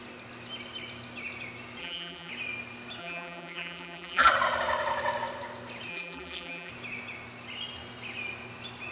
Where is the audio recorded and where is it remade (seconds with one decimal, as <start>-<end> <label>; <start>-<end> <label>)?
0.0-1.8 recorded; 1.8-2.3 remade; 2.3-3.0 recorded; 3.0-4.3 remade; 4.3-5.9 recorded; 5.9-6.7 remade; 6.7-8.9 recorded